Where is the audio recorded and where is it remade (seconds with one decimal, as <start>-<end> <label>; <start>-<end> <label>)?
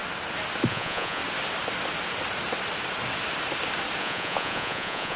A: 0.0-0.7 recorded; 0.7-1.2 remade; 1.2-4.0 recorded; 4.0-5.2 remade